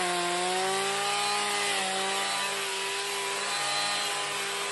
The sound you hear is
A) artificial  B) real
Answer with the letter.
B